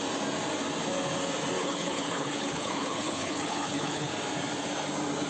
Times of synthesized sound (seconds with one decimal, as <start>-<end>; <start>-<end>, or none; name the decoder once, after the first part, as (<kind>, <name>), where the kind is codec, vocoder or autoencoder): 1.6-4.1 (codec, HILCodec)